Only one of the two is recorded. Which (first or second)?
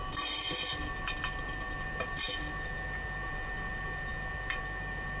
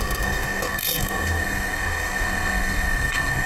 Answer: first